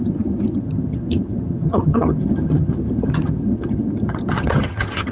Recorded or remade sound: remade